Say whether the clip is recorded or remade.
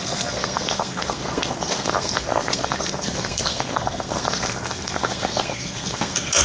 remade